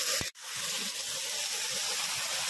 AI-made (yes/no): no